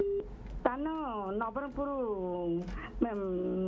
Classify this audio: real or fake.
real